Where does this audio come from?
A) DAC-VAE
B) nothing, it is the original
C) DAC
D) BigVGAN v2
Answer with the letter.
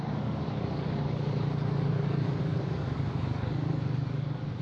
C